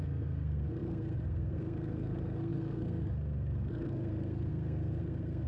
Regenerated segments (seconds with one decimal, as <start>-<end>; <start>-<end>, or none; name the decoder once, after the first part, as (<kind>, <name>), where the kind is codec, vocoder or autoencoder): 0.0-5.5 (codec, SNAC)